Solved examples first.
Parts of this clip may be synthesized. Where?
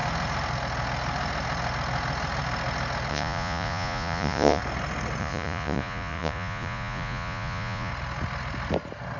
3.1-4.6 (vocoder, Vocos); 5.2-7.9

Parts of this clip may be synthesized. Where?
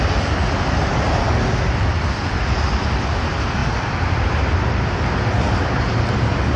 none